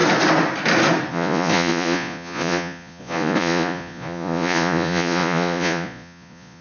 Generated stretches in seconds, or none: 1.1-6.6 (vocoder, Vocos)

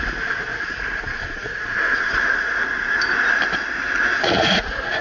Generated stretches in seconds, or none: 0.5-2.6 (vocoder, Vocos); 4.1-5.0

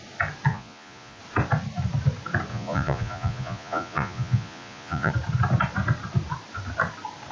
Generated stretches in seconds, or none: 0.5-1.2 (vocoder, Vocos); 2.5-5.1